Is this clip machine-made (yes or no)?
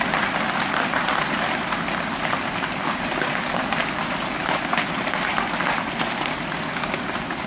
no